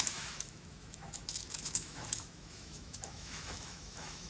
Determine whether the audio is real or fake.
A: fake